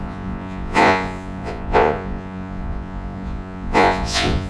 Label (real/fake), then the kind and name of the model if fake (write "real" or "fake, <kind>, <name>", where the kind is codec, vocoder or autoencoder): fake, vocoder, Vocos